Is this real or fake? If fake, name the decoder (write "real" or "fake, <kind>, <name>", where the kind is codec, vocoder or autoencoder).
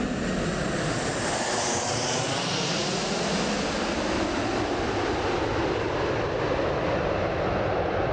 real